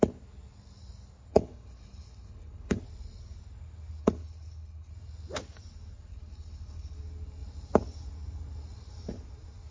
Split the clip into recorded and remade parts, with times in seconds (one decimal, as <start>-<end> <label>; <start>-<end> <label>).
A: 0.0-1.3 recorded; 1.3-2.8 remade; 2.8-4.0 recorded; 4.0-4.9 remade; 4.9-6.1 recorded; 6.1-7.0 remade; 7.0-9.7 recorded

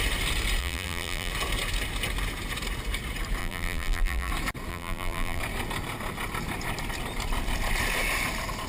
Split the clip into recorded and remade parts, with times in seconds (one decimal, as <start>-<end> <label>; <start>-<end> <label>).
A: 0.0-0.6 recorded; 0.6-1.3 remade; 1.3-3.4 recorded; 3.4-4.3 remade; 4.3-4.7 recorded; 4.7-5.4 remade; 5.4-8.7 recorded

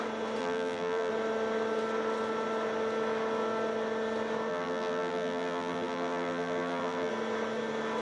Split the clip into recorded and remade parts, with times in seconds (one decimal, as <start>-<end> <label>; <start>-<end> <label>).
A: 0.0-0.4 recorded; 0.4-1.1 remade; 1.1-4.5 recorded; 4.5-7.1 remade; 7.1-8.0 recorded

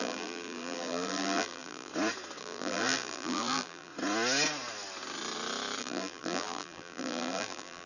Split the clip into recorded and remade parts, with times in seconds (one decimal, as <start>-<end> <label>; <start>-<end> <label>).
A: 0.0-1.9 remade; 1.9-2.4 recorded; 2.4-3.9 remade; 3.9-5.8 recorded; 5.8-7.9 remade

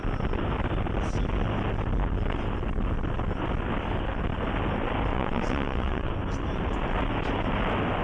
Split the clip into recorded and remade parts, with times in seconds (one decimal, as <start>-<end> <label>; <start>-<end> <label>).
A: 0.0-5.1 recorded; 5.1-6.1 remade; 6.1-8.0 recorded

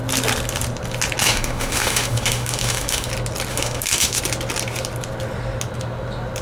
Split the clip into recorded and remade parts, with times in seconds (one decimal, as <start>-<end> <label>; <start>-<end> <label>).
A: 0.0-1.2 recorded; 1.2-3.1 remade; 3.1-3.5 recorded; 3.5-4.2 remade; 4.2-6.4 recorded